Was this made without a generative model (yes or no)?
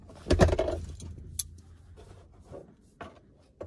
yes